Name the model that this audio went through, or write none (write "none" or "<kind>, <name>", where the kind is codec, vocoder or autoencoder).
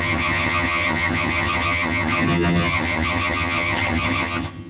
vocoder, HiFi-GAN